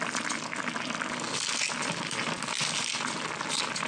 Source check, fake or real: real